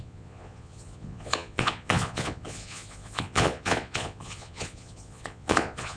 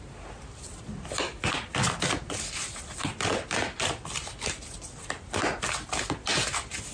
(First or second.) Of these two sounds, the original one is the second